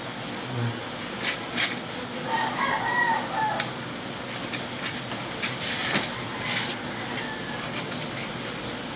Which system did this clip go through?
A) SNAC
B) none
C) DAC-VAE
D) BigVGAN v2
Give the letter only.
B